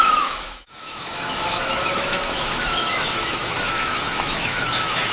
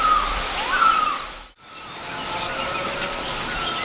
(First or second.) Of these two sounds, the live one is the second